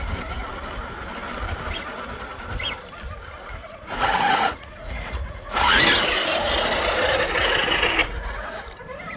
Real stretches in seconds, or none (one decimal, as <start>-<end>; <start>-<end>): 0.0-3.6; 5.8-8.0; 8.6-9.2

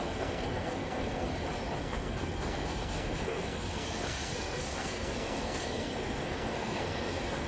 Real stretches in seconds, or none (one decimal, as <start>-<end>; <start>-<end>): 1.3-1.8

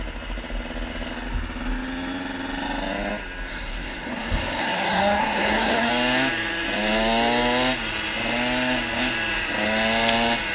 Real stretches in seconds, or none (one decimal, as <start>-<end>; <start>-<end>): 0.0-3.5; 5.9-10.5

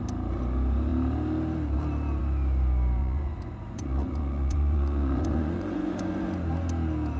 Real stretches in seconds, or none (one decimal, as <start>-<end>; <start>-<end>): 0.0-3.0; 6.2-7.2

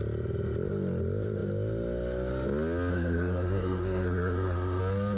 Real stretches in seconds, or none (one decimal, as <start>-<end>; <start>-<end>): 0.0-2.9; 4.8-5.2